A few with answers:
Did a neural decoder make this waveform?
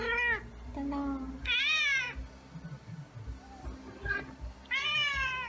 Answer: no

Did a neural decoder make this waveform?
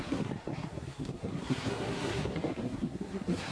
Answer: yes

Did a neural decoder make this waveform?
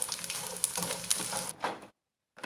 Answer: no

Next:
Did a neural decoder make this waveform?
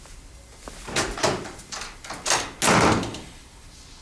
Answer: no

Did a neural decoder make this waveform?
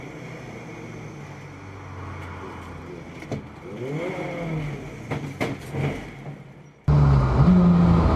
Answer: no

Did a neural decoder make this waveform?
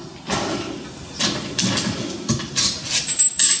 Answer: no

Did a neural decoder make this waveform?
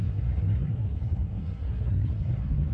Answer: yes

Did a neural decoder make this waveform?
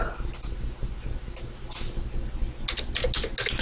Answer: no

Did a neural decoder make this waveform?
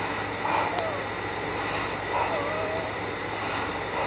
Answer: no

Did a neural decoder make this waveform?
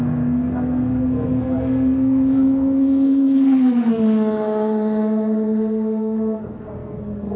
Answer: yes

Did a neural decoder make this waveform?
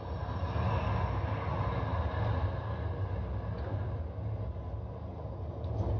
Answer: no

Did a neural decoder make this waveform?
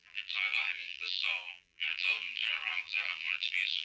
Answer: yes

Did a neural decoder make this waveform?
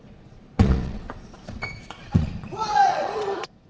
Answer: yes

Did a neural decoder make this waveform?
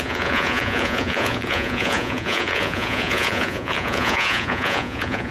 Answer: yes